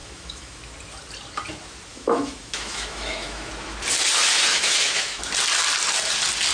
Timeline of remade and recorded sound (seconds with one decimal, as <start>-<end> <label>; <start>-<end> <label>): 0.0-0.6 remade; 0.6-1.9 recorded; 1.9-3.5 remade; 3.5-4.5 recorded; 4.5-5.2 remade; 5.2-6.5 recorded